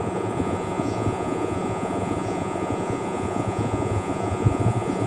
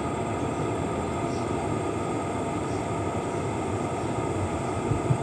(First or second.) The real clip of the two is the second